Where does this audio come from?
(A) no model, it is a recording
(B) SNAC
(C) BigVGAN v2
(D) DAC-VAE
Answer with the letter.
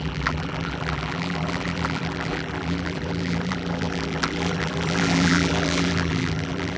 C